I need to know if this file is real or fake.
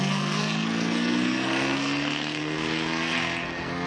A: fake